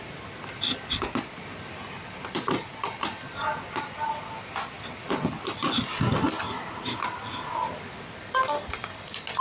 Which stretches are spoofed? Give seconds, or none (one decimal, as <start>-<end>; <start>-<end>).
none